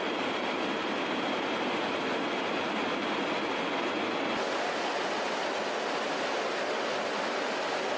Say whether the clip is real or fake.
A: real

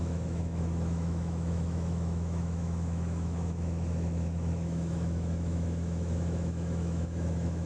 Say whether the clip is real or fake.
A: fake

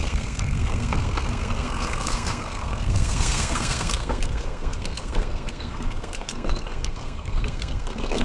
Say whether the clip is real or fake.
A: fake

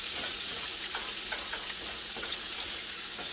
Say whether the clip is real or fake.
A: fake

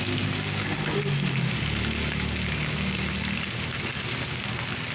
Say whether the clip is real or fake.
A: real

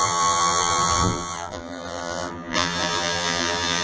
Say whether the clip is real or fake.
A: fake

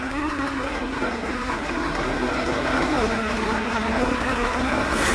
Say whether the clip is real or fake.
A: fake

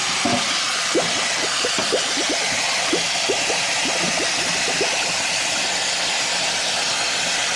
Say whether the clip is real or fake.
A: real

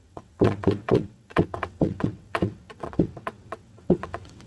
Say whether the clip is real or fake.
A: fake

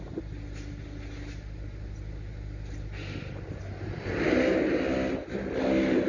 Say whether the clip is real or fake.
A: real